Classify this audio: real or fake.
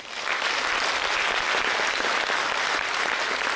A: real